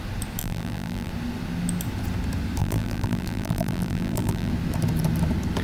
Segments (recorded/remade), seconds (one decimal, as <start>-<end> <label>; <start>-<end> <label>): 0.0-0.4 recorded; 0.4-1.1 remade; 1.1-2.6 recorded; 2.6-4.5 remade; 4.5-5.6 recorded

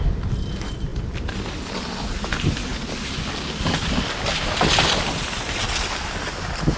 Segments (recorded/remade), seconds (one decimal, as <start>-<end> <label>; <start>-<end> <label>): 0.0-6.8 recorded

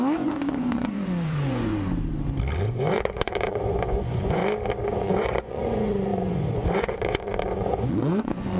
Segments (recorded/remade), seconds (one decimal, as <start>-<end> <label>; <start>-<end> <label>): 0.0-1.7 remade; 1.7-2.6 recorded; 2.6-4.4 remade; 4.4-4.9 recorded; 4.9-8.6 remade

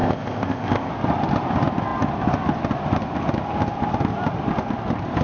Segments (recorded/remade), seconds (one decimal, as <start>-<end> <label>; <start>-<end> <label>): 0.0-0.9 remade; 0.9-5.2 recorded

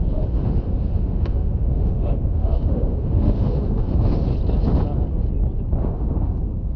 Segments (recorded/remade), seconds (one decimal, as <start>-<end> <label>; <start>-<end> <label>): 0.0-4.3 remade; 4.3-5.8 recorded; 5.8-6.8 remade

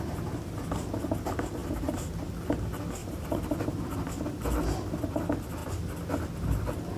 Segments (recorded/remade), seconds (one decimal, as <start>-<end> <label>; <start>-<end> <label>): 0.0-1.6 recorded; 1.6-2.2 remade; 2.2-3.0 recorded; 3.0-3.8 remade; 3.8-7.0 recorded